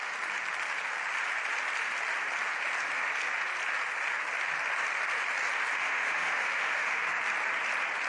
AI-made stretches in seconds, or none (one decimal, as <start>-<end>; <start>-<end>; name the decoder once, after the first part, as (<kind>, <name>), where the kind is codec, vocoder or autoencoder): 5.8-7.1 (autoencoder, DAC-VAE)